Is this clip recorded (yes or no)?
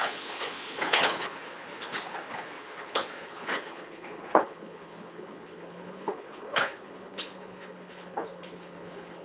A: no